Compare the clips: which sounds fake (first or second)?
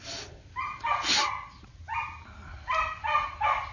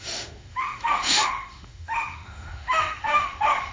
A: second